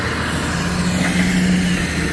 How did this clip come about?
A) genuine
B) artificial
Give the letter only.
A